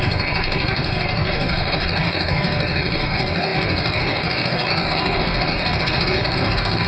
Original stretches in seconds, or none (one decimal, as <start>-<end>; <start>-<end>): none